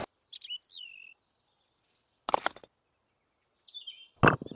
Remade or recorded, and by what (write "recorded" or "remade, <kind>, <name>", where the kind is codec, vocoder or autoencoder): recorded